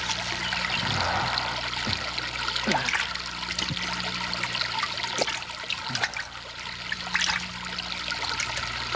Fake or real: real